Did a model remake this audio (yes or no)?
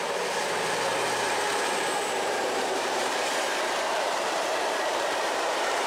yes